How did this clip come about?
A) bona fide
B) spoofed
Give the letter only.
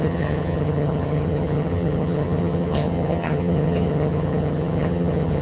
B